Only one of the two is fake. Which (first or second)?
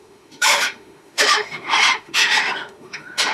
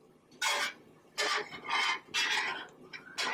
first